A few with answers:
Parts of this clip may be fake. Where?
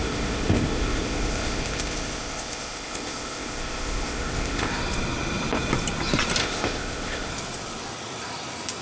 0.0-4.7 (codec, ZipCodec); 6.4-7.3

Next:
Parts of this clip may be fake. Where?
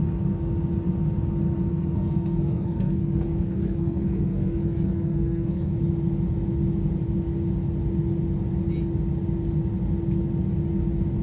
1.7-5.7 (codec, SNAC)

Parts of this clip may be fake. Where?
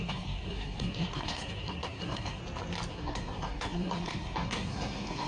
0.0-2.4 (codec, SNAC); 2.9-5.3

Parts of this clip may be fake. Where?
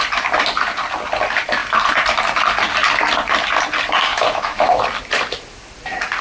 4.1-4.8 (autoencoder, DAC-VAE)